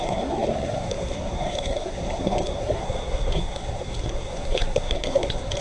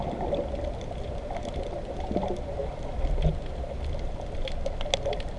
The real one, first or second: second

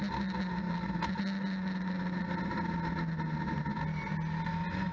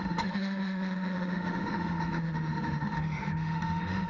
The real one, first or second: first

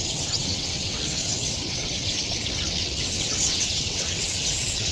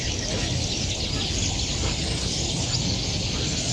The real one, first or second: second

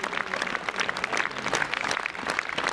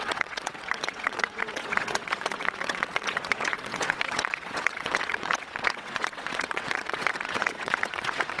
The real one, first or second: first